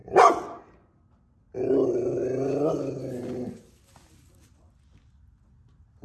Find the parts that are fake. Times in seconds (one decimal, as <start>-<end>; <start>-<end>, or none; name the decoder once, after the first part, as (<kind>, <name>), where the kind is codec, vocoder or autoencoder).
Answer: 0.0-0.6 (vocoder, Vocos)